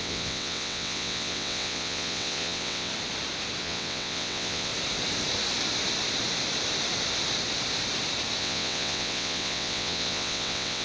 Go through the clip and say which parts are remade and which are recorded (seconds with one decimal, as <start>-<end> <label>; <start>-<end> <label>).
0.0-2.9 remade; 2.9-3.6 recorded; 3.6-4.7 remade; 4.7-8.4 recorded; 8.4-10.8 remade